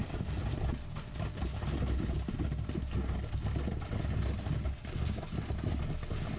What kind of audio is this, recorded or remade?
recorded